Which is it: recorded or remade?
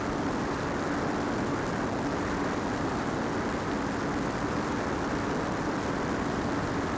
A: recorded